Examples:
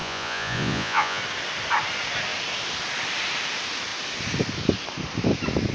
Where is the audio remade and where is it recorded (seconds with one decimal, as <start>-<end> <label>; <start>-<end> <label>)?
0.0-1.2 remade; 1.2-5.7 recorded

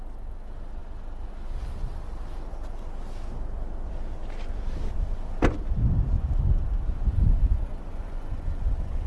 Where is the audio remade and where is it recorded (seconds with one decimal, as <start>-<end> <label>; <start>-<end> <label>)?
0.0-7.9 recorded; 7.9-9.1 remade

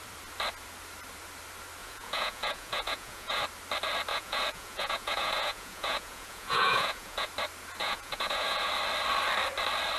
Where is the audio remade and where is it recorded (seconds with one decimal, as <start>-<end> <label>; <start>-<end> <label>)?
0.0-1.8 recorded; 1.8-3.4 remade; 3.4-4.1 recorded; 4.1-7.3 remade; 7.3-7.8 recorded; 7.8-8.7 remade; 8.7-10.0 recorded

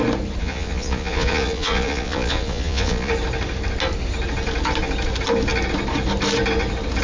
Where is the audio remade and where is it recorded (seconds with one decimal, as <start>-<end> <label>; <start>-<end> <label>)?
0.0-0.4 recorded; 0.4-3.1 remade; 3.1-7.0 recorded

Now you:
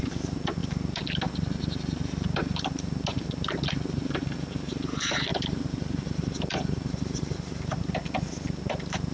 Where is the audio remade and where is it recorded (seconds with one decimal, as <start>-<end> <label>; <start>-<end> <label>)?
0.0-9.1 recorded

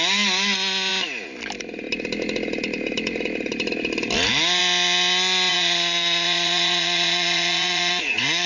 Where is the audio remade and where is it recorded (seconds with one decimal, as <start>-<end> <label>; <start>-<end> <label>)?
0.0-5.5 recorded; 5.5-8.5 remade

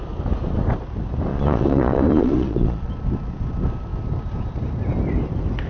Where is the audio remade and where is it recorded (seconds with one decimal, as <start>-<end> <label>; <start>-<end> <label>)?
0.0-1.3 recorded; 1.3-2.9 remade; 2.9-5.7 recorded